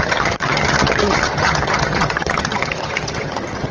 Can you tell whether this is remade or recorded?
remade